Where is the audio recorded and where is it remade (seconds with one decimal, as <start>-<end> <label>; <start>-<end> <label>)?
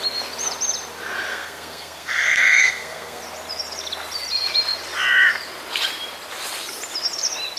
0.0-1.3 recorded; 1.3-3.2 remade; 3.2-7.6 recorded